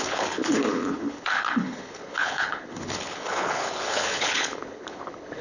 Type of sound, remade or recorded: remade